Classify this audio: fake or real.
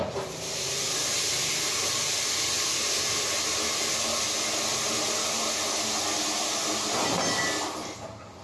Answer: real